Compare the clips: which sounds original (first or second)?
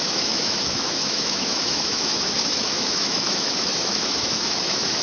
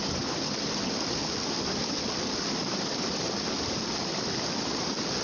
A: second